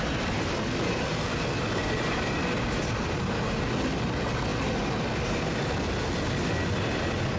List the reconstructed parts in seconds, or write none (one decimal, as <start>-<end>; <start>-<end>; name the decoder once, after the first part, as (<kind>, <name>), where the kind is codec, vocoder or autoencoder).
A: none